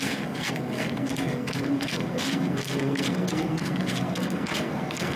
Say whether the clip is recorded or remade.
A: remade